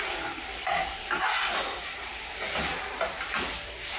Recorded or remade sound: recorded